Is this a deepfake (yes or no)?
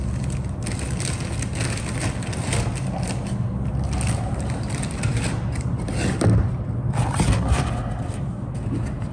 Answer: no